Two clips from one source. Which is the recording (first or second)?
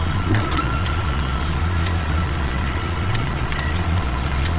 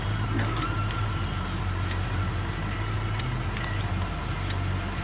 second